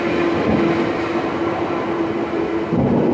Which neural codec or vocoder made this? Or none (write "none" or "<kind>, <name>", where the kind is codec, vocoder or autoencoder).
none